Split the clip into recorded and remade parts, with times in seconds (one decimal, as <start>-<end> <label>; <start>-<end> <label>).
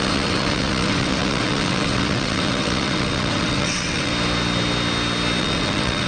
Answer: 0.0-4.1 remade; 4.1-5.4 recorded; 5.4-6.1 remade